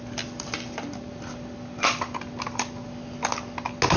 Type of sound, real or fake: real